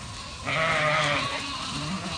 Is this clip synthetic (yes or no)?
no